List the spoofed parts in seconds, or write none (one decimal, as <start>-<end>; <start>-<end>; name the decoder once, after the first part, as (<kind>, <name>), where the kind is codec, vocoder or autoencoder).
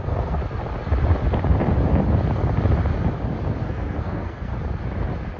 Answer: 0.0-0.4 (codec, SNAC); 3.6-4.5